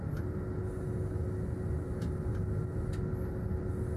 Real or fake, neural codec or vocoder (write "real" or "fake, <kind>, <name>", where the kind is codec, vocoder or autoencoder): real